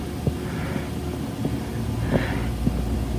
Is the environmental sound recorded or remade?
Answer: recorded